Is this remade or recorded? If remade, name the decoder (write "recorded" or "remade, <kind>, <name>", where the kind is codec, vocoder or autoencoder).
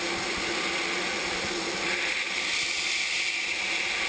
remade, vocoder, BigVGAN v2